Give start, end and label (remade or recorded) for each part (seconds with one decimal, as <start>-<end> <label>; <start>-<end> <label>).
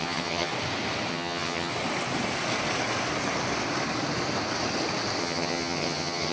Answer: 0.0-0.5 remade; 0.5-1.1 recorded; 1.1-1.7 remade; 1.7-5.2 recorded; 5.2-6.3 remade